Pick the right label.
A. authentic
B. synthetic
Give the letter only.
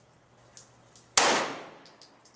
A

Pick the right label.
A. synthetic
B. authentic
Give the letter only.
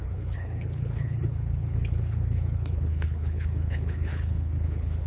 A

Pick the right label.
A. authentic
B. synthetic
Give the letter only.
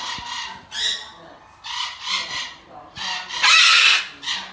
A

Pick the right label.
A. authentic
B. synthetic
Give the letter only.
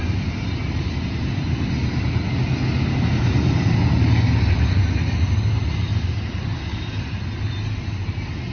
A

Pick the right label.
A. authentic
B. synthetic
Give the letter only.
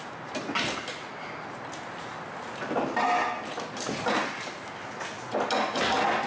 A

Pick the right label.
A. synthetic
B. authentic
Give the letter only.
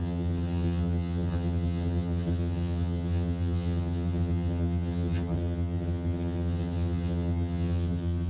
A